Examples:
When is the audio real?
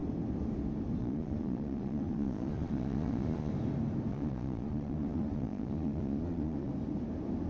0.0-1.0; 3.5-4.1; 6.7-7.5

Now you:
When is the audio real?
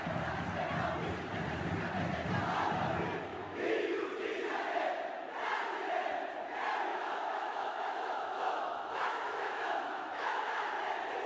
0.0-3.3; 4.1-6.9; 10.7-11.3